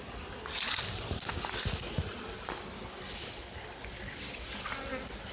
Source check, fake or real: real